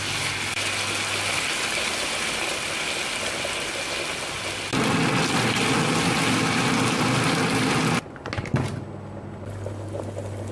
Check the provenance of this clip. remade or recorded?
recorded